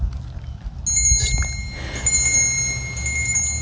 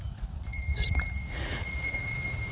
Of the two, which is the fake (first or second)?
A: second